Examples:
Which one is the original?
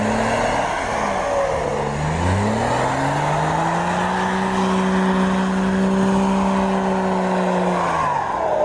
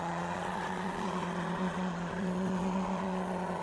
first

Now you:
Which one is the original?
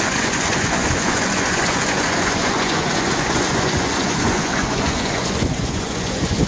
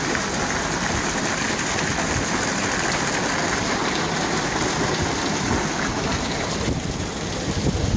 second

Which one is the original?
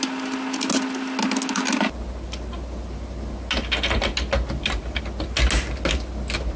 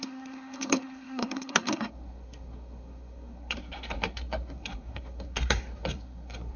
first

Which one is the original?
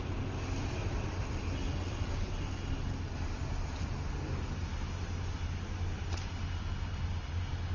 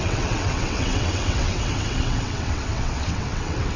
first